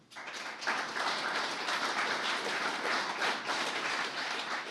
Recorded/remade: recorded